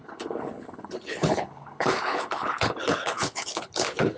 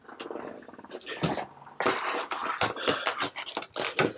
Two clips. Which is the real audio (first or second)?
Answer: second